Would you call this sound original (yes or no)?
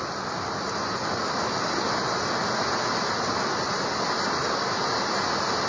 yes